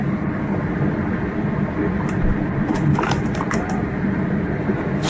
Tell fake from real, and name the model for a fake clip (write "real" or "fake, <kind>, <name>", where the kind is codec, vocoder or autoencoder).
fake, vocoder, BigVGAN v2